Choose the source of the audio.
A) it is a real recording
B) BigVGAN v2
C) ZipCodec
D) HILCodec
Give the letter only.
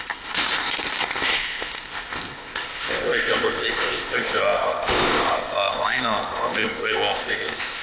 C